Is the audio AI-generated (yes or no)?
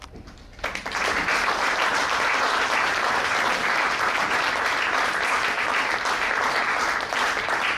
yes